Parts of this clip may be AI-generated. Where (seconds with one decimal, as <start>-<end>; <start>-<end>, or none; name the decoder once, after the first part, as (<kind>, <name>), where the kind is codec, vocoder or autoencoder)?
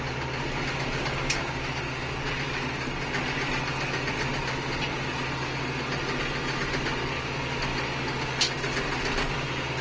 none